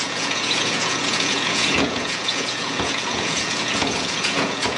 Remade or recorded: remade